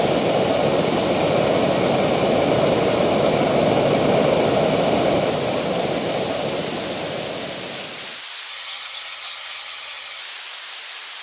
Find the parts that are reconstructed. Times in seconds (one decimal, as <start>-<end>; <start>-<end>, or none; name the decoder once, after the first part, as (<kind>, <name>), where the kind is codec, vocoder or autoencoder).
8.5-10.2 (vocoder, HiFi-GAN)